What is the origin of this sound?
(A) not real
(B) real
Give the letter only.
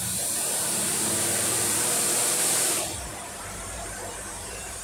A